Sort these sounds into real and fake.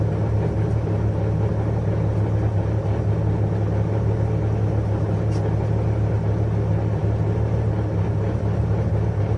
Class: real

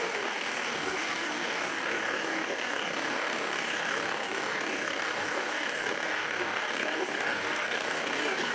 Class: fake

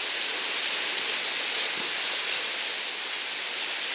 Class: real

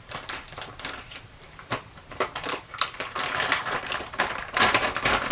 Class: fake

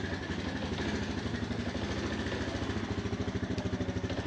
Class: real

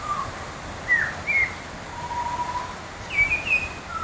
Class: real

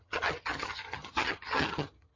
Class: fake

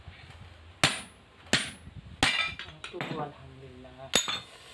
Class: real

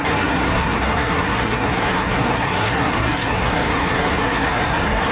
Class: fake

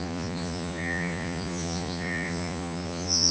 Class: fake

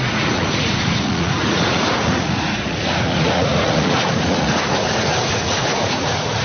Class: fake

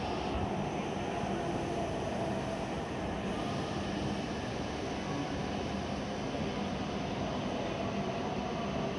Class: real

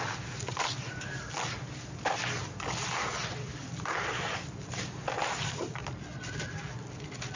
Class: real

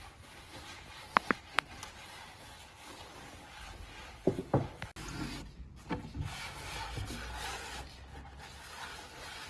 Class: real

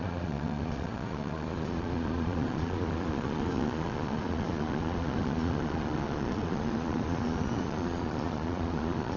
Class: fake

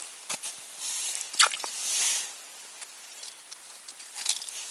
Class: fake